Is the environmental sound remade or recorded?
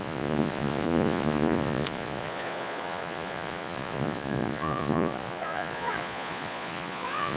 remade